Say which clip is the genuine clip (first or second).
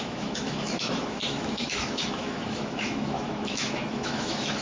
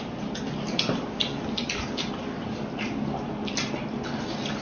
second